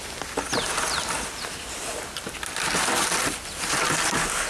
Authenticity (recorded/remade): recorded